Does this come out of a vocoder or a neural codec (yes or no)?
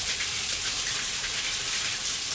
no